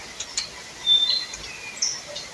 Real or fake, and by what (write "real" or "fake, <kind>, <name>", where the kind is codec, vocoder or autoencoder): real